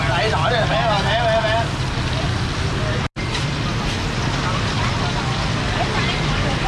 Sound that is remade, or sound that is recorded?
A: recorded